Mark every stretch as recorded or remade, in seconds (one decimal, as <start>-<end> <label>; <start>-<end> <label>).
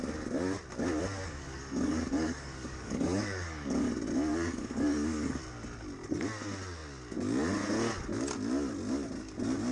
0.0-1.2 recorded; 1.2-3.9 remade; 3.9-4.3 recorded; 4.3-5.4 remade; 5.4-9.7 recorded